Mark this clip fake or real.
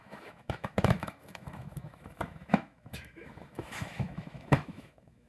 fake